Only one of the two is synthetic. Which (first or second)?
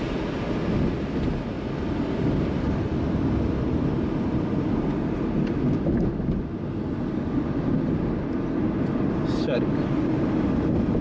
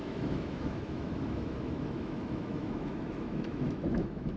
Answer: second